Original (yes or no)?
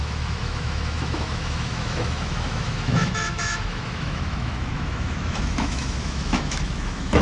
no